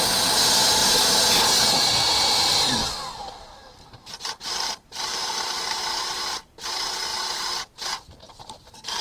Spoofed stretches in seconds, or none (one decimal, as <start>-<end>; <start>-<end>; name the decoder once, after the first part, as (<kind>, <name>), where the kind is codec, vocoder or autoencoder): 3.6-5.8 (vocoder, BigVGAN v2); 7.1-9.0

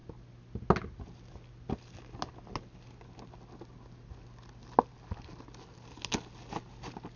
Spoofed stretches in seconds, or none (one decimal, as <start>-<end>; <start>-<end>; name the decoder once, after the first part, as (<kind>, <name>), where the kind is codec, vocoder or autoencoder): none

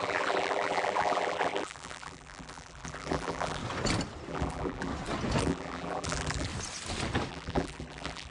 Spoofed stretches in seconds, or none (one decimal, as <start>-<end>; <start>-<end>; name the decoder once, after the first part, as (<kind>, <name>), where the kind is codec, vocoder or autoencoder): 0.0-3.6 (vocoder, BigVGAN v2); 4.3-4.9; 5.4-6.5; 7.3-8.3

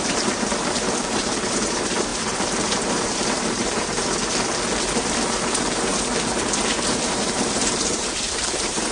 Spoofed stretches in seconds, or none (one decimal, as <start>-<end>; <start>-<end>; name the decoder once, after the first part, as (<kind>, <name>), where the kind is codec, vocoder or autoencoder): 0.0-4.0 (vocoder, BigVGAN v2); 5.0-5.9; 6.7-8.9